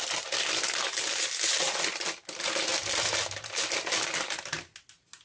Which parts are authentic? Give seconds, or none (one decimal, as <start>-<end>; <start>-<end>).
0.0-5.2